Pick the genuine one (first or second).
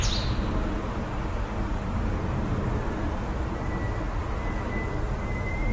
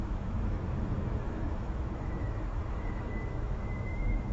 first